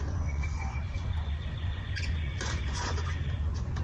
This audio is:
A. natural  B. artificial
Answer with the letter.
B